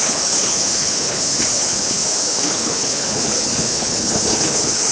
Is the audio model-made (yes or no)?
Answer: yes